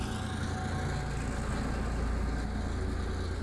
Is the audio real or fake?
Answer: real